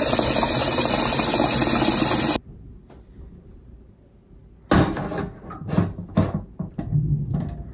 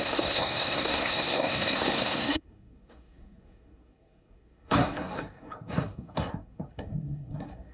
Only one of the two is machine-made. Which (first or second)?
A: second